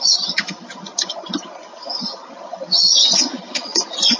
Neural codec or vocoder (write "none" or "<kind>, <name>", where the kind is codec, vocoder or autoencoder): vocoder, HiFi-GAN